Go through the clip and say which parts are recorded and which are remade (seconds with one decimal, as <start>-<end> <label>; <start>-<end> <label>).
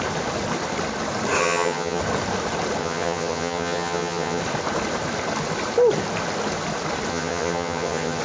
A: 0.0-1.4 recorded; 1.4-2.0 remade; 2.0-2.8 recorded; 2.8-4.4 remade; 4.4-7.1 recorded; 7.1-8.2 remade